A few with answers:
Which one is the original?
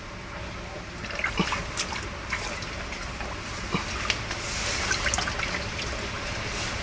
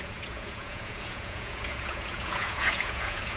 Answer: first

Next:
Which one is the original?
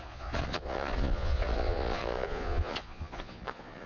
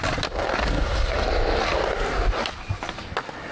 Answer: second